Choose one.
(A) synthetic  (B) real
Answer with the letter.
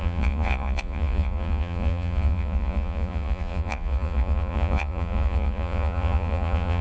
A